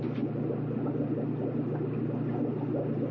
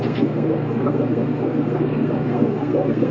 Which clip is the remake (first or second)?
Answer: second